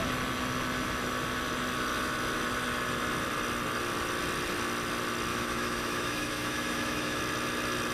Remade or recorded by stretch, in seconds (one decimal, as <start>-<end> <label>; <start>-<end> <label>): 0.0-5.3 recorded; 5.3-7.2 remade; 7.2-7.9 recorded